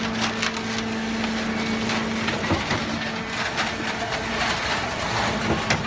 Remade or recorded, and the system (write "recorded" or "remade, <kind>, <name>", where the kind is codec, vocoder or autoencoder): recorded